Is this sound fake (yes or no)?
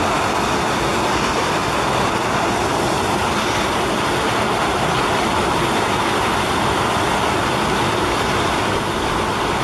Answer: no